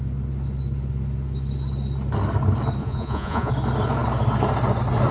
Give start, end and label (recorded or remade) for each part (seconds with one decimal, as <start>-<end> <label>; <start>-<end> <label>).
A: 0.0-2.8 recorded; 2.8-3.5 remade; 3.5-5.1 recorded